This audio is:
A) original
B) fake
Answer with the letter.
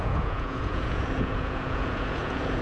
B